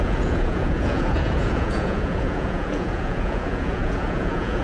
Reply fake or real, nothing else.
fake